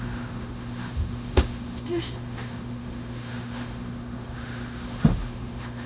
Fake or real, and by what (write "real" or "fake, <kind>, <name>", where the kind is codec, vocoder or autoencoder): fake, autoencoder, DAC-VAE